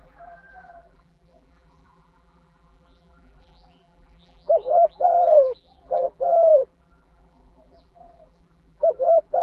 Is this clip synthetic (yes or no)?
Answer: yes